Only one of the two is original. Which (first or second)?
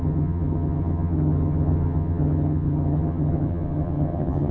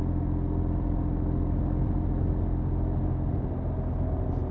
second